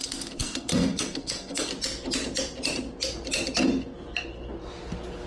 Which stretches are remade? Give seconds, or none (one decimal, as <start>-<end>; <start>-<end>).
0.0-1.7